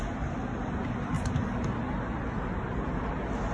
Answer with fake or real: real